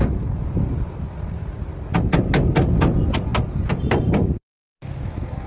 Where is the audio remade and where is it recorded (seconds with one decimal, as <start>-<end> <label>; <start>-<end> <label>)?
0.0-5.5 recorded